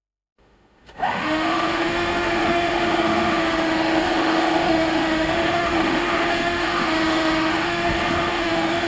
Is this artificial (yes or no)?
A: yes